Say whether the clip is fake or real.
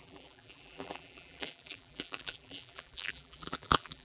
fake